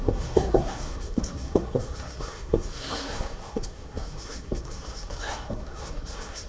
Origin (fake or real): fake